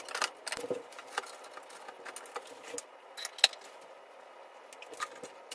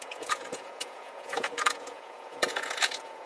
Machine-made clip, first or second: second